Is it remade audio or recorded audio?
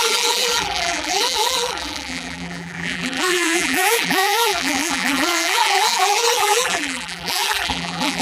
remade